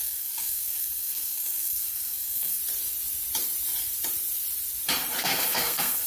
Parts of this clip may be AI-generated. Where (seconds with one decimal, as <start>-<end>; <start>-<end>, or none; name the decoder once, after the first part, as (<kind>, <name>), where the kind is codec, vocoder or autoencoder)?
0.0-2.6 (codec, SNAC); 5.2-6.1